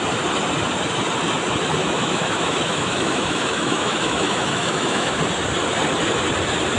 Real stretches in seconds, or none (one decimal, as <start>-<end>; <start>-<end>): 0.0-1.8; 5.2-6.8